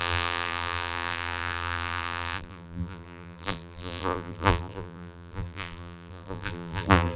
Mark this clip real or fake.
fake